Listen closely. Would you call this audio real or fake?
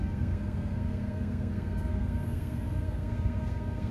fake